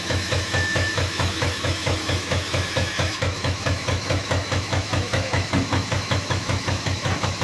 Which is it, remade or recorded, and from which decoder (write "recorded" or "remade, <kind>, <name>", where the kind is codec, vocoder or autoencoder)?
remade, autoencoder, DAC-VAE